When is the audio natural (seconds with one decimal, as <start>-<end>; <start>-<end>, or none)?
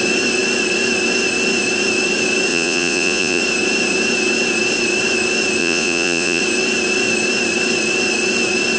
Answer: 0.0-2.5; 3.4-5.6; 6.4-8.8